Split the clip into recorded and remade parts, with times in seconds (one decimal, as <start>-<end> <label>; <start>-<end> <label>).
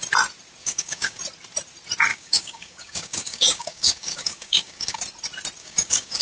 0.0-0.6 recorded; 0.6-1.2 remade; 1.2-2.1 recorded; 2.1-5.0 remade; 5.0-5.6 recorded; 5.6-6.2 remade